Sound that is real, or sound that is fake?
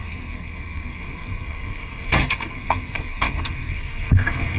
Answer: fake